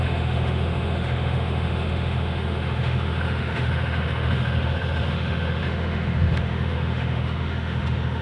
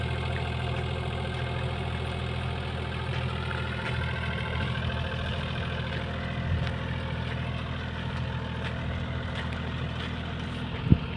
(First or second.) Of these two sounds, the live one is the second